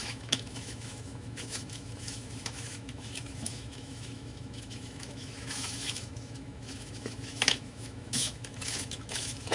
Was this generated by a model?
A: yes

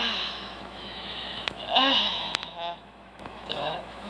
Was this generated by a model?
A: yes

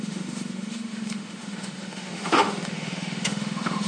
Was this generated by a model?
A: yes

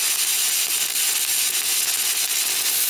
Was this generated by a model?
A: no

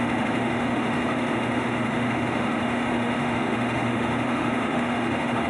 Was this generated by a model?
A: yes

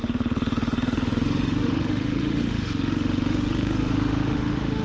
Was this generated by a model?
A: yes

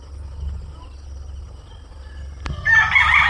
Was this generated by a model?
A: no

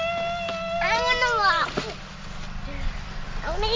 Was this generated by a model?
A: no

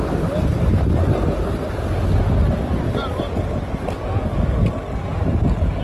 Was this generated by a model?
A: no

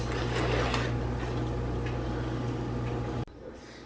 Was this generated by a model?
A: no